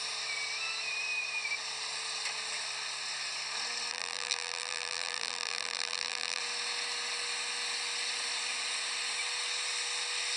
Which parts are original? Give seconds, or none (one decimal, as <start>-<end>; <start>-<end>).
0.0-3.9; 6.4-10.4